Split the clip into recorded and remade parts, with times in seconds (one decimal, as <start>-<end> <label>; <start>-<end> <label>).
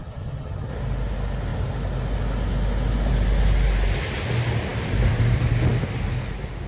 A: 0.0-0.7 remade; 0.7-6.7 recorded